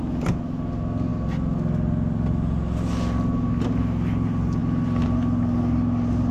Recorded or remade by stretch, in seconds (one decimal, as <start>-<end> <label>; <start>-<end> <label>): 0.0-6.3 recorded